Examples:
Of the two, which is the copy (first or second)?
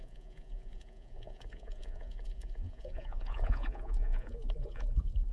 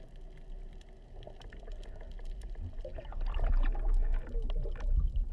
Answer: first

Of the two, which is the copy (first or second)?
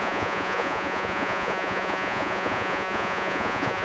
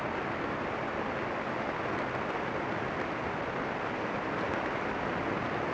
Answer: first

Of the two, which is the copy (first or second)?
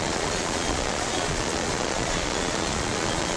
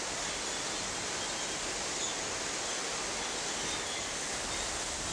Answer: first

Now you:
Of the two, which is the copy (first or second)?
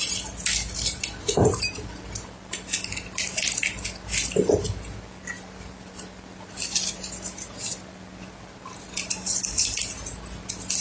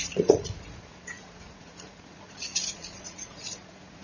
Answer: second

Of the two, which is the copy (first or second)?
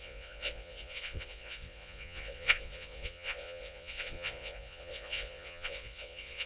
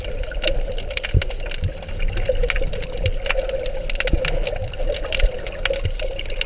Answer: first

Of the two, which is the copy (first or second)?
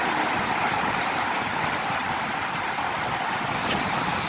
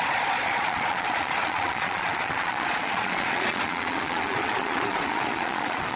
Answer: second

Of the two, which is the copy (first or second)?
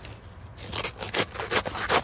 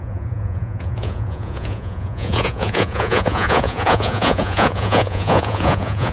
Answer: second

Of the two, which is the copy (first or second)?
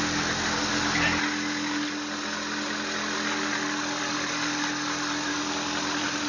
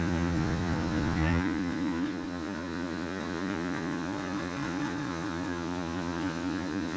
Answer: second